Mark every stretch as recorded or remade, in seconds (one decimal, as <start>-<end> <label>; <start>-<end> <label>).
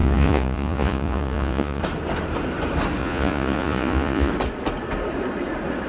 0.0-1.8 remade; 1.8-3.0 recorded; 3.0-4.3 remade; 4.3-5.9 recorded